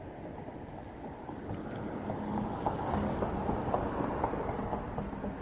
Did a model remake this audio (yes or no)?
no